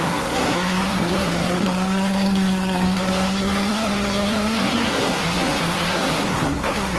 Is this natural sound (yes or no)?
no